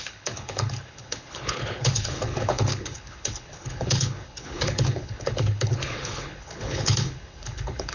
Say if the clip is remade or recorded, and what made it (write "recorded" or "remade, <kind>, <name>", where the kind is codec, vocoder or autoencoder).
remade, codec, HILCodec